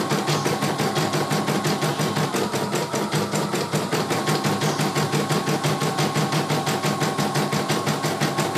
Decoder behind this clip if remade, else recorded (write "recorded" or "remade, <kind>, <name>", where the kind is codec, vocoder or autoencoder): recorded